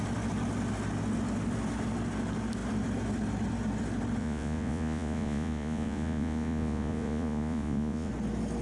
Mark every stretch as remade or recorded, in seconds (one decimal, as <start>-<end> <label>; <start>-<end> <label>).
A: 0.0-4.2 recorded; 4.2-8.1 remade; 8.1-8.6 recorded